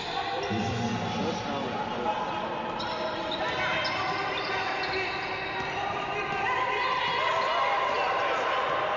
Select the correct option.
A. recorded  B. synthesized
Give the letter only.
A